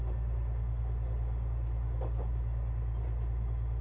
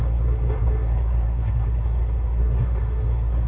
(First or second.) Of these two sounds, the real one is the first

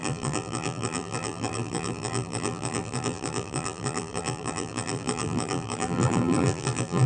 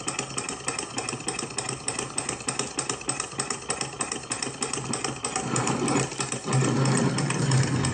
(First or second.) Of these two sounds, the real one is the second